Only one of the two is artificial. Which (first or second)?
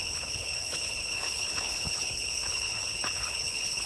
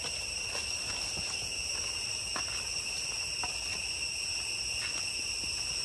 first